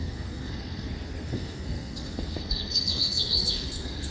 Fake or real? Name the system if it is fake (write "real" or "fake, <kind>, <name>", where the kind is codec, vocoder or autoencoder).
fake, codec, SNAC